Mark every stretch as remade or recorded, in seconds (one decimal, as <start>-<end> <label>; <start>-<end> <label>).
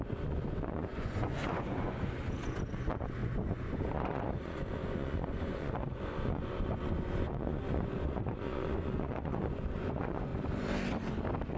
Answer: 0.0-10.3 remade; 10.3-11.6 recorded